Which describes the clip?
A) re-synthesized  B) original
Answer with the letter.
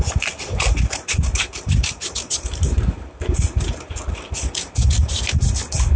B